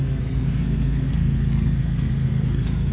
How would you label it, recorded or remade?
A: remade